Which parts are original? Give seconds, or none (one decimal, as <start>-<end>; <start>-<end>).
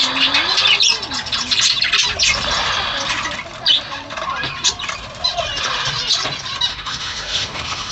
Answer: 0.0-6.7